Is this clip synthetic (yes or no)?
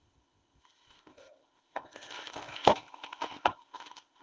yes